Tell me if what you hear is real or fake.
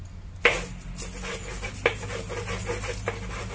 real